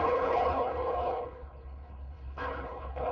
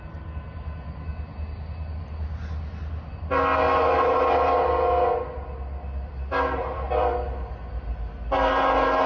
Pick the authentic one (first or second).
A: second